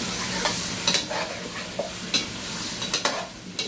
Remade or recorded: recorded